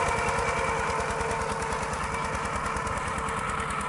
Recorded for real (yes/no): yes